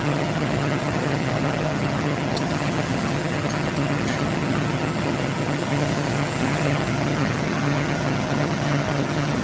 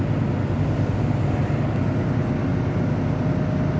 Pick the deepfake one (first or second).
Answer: first